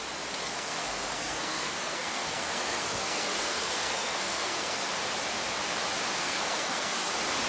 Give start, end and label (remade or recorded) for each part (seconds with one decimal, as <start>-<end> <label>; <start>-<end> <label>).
0.0-0.4 recorded; 0.4-4.9 remade; 4.9-6.2 recorded; 6.2-7.1 remade; 7.1-7.5 recorded